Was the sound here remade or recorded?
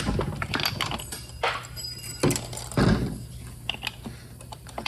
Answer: recorded